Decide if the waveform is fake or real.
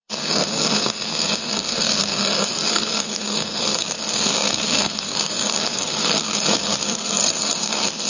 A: fake